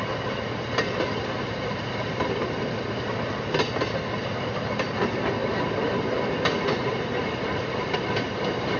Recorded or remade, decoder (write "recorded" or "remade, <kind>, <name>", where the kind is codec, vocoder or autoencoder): recorded